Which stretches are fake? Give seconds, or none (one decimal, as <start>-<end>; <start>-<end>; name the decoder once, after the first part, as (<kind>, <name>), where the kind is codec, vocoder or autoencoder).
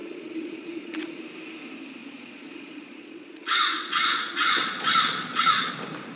0.0-1.2 (vocoder, Vocos); 2.0-5.7